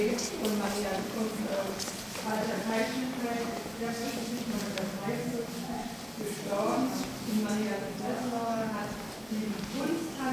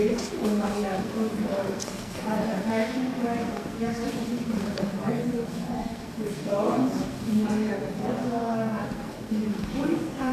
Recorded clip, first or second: first